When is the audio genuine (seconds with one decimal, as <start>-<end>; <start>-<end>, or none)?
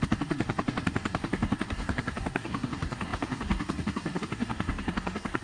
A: none